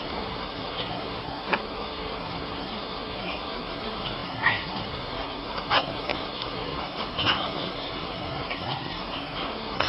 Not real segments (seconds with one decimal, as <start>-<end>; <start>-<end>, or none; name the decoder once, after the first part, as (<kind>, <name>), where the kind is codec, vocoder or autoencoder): 0.0-9.9 (codec, SNAC)